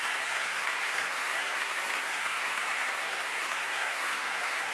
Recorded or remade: remade